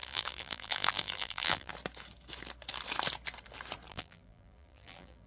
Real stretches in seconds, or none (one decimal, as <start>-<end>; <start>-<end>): 1.7-3.9